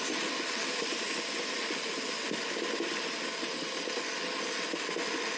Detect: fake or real real